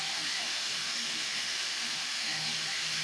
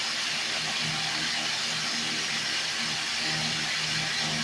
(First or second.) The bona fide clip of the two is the second